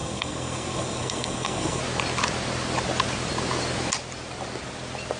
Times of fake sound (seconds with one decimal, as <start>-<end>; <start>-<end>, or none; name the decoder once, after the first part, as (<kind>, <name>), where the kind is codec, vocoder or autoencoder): 0.0-1.8 (codec, SNAC)